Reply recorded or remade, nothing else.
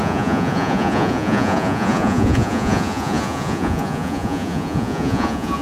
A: remade